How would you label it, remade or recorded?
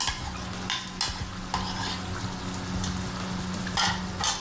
recorded